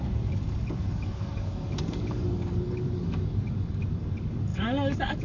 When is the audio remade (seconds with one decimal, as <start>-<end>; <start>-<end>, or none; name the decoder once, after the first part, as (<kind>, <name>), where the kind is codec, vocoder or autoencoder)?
0.0-5.2 (codec, DAC)